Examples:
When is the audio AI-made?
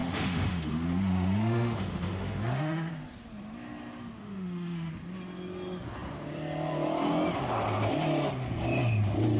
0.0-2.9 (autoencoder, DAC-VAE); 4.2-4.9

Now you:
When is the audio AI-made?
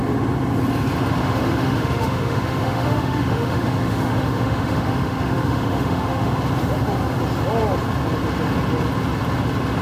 1.2-6.3 (autoencoder, DAC-VAE)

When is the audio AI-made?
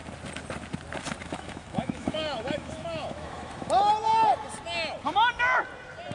1.2-3.9 (autoencoder, DAC-VAE)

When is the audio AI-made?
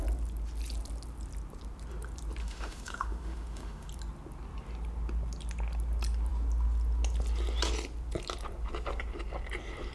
2.4-3.9 (autoencoder, DAC-VAE)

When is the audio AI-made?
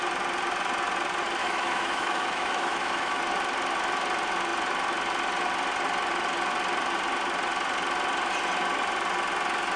1.4-3.2 (autoencoder, DAC-VAE)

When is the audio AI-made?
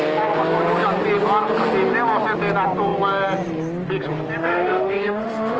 4.4-5.6 (autoencoder, DAC-VAE)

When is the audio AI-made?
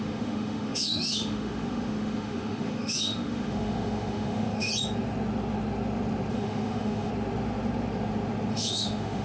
0.0-4.7 (autoencoder, DAC-VAE); 6.3-7.1; 8.5-9.2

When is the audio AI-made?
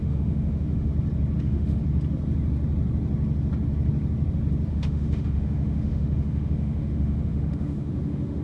0.0-0.9 (autoencoder, DAC-VAE); 1.4-1.8; 4.7-8.4